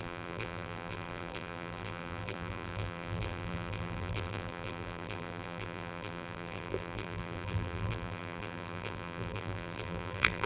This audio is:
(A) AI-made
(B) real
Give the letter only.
A